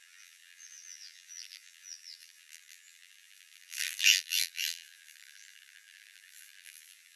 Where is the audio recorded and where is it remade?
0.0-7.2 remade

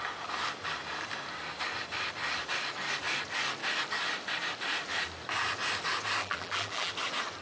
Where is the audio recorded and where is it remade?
0.0-6.2 recorded; 6.2-6.9 remade; 6.9-7.4 recorded

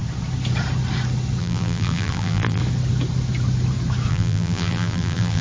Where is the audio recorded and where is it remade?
0.0-1.4 recorded; 1.4-2.6 remade; 2.6-4.1 recorded; 4.1-5.4 remade